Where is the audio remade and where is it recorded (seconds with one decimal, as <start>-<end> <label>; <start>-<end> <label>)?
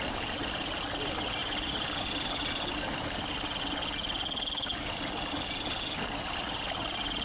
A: 0.0-7.2 recorded